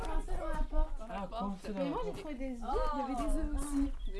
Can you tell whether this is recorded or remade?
recorded